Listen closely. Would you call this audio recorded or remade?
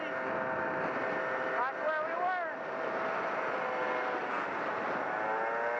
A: recorded